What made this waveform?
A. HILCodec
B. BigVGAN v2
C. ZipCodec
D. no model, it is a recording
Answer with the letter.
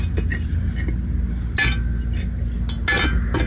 D